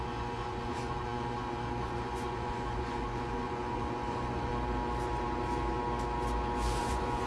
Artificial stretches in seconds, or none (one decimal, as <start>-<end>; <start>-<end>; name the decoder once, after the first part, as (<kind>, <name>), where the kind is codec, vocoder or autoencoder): 0.0-4.5 (vocoder, Vocos); 6.8-7.3